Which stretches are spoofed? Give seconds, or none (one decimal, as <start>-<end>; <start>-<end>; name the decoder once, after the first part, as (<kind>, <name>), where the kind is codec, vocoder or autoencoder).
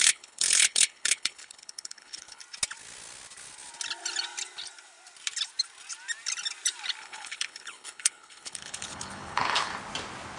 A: 0.0-2.4 (codec, HILCodec); 7.0-9.7